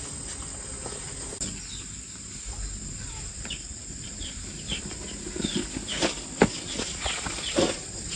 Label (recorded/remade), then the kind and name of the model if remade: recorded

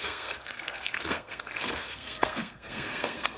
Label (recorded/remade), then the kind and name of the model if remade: remade, codec, SNAC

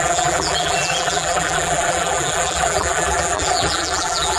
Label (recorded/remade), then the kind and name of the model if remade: remade, vocoder, BigVGAN v2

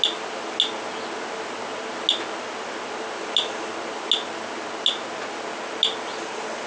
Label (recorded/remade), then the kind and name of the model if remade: recorded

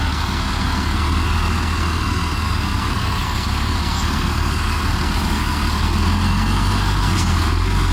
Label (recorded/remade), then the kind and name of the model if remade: remade, codec, SNAC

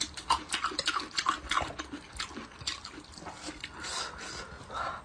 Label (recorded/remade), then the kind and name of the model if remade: recorded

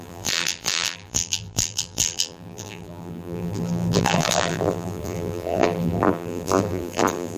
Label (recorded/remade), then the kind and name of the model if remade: remade, vocoder, BigVGAN v2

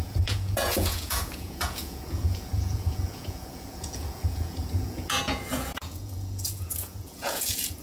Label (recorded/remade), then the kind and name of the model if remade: remade, vocoder, Vocos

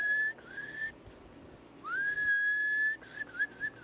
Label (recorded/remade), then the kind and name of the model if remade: recorded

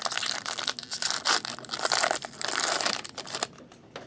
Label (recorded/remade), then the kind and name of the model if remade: recorded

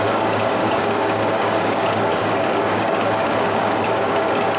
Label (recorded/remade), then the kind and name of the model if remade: remade, codec, DAC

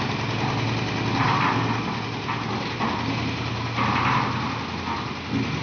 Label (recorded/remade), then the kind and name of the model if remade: recorded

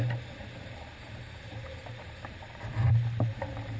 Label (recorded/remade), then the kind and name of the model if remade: remade, vocoder, BigVGAN v2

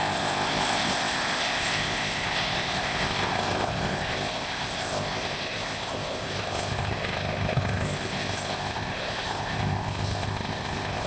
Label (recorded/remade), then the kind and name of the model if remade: remade, codec, ZipCodec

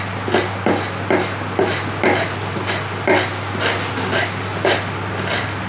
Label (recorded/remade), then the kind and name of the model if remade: recorded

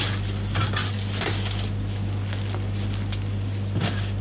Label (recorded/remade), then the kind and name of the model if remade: recorded